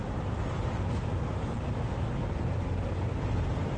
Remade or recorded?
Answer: recorded